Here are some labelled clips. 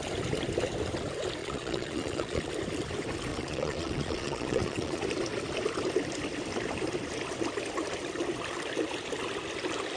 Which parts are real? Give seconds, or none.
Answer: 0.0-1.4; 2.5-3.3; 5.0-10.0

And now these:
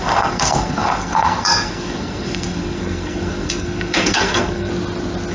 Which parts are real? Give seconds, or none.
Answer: 4.7-5.3

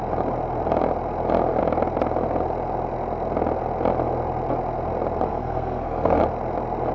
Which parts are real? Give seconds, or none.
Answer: 0.0-5.3; 6.2-6.9

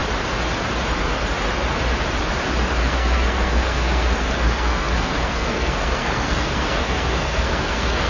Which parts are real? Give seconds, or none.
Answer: 0.0-2.8

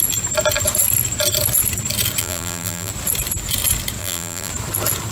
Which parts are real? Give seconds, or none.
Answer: 0.0-2.2; 2.9-4.0; 4.5-5.1

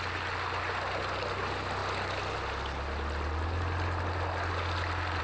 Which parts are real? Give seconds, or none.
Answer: 0.0-5.2